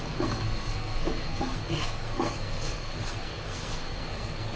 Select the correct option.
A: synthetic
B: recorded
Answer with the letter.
A